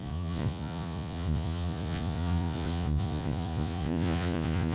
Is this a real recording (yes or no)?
no